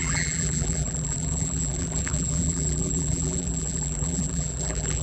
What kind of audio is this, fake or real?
fake